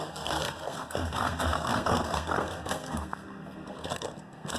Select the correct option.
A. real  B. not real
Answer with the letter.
B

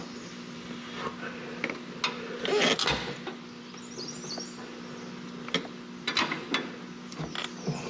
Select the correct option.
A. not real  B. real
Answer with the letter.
B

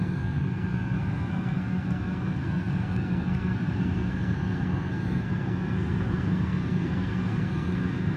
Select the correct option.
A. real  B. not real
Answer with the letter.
B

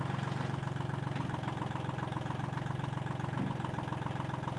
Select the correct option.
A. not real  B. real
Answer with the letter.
B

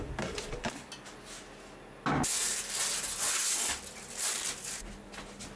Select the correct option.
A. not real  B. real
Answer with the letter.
B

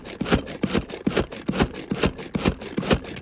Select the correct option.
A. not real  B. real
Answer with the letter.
B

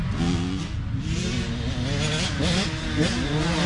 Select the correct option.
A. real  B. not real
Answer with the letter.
A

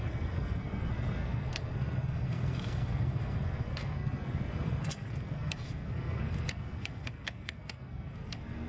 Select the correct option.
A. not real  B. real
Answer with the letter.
A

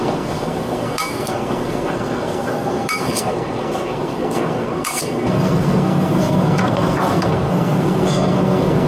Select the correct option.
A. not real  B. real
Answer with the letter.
A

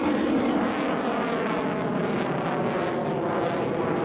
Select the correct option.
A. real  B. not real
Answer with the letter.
A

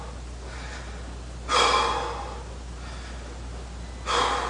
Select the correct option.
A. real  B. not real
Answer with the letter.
A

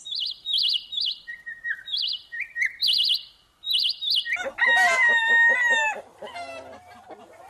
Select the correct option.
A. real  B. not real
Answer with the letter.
A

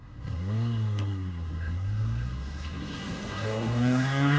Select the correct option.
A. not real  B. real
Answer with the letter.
A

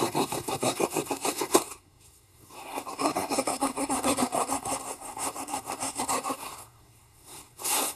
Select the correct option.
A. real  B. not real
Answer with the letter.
B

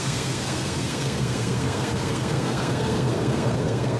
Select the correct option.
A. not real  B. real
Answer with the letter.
A